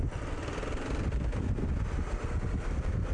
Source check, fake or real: real